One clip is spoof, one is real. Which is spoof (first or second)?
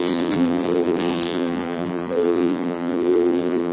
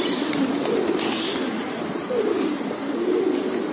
first